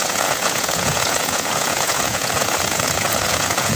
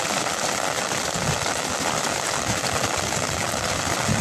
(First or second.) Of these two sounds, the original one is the second